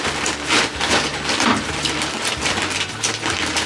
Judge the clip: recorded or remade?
recorded